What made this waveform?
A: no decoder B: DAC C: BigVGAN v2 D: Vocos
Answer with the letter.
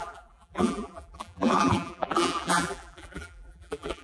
C